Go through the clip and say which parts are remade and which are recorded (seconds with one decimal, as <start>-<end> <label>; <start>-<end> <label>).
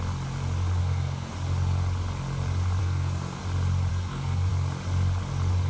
0.0-0.8 recorded; 0.8-1.3 remade; 1.3-2.8 recorded; 2.8-3.4 remade; 3.4-3.9 recorded; 3.9-4.5 remade; 4.5-5.7 recorded